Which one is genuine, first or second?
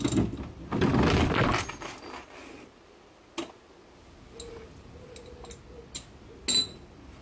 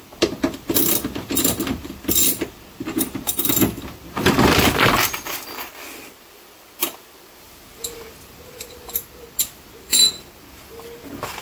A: first